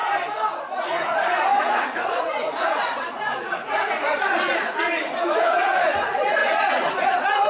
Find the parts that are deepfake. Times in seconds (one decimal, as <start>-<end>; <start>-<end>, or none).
0.6-7.5